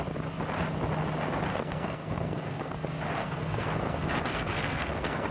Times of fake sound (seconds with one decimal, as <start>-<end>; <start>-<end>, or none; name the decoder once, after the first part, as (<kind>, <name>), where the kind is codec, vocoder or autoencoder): 1.5-2.7 (codec, SNAC); 3.2-5.3